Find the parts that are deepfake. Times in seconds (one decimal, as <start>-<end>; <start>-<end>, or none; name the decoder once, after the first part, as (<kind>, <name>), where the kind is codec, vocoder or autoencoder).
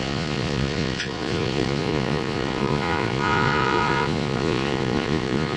0.0-5.6 (vocoder, Vocos)